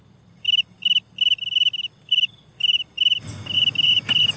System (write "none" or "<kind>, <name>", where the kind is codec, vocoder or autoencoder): none